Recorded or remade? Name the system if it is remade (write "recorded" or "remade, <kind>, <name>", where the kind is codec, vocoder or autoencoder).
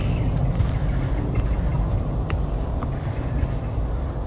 recorded